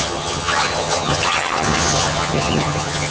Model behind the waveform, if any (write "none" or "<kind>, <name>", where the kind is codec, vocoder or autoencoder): vocoder, HiFi-GAN